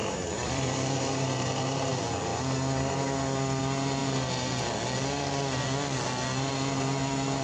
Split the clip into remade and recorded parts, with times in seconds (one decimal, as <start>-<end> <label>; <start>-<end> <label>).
0.0-1.9 remade; 1.9-7.4 recorded